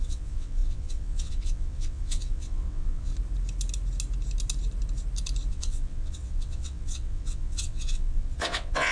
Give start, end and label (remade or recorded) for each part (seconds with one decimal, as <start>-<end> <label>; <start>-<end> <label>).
0.0-3.1 remade; 3.1-5.5 recorded; 5.5-8.9 remade